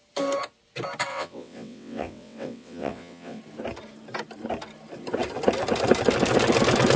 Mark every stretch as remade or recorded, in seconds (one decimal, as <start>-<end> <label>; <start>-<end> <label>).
0.0-1.1 recorded; 1.1-3.4 remade; 3.4-7.0 recorded